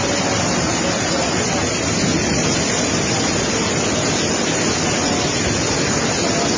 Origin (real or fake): real